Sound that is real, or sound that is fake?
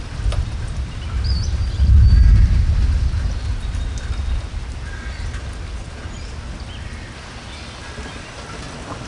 real